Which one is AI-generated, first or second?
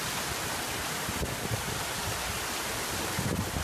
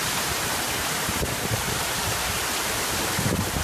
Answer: second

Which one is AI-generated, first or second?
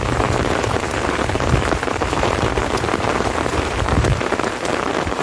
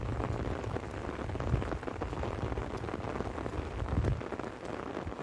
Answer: first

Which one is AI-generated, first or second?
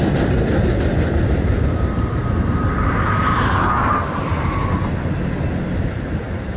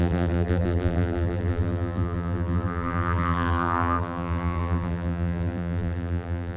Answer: second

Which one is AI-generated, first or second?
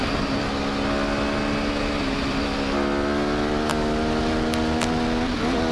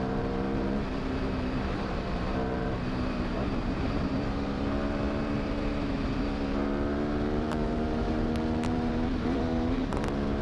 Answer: second